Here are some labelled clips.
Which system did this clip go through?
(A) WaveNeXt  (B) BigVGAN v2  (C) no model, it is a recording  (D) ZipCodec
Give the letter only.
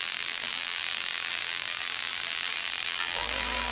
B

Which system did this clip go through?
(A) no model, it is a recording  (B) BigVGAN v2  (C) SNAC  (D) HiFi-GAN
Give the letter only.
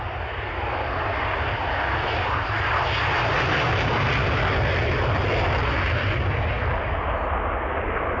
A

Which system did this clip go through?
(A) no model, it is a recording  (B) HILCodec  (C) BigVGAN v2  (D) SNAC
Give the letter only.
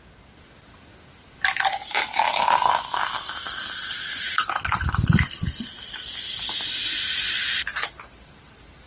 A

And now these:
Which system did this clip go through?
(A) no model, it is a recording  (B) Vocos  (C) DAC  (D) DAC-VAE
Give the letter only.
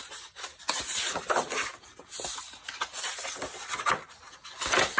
A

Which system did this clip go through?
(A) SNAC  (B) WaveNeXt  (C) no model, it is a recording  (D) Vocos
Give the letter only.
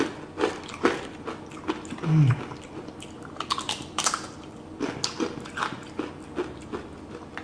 C